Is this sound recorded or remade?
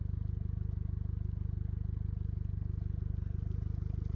recorded